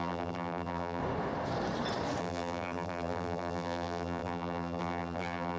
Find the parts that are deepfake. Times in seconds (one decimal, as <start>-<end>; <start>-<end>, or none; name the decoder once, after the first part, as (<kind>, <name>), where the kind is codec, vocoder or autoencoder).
0.0-1.0 (vocoder, BigVGAN v2); 2.2-5.6